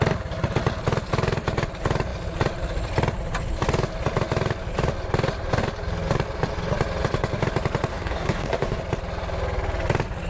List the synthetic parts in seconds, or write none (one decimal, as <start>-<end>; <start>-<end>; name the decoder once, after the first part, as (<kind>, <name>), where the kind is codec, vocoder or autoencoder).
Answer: 7.9-8.8 (codec, DAC)